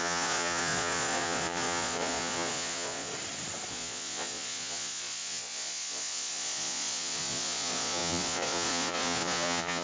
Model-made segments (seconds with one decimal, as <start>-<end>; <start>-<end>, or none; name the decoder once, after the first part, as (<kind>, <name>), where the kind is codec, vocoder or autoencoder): 0.0-3.1 (vocoder, Vocos); 3.7-9.8